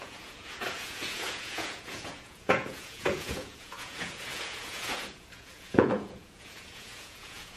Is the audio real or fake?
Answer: fake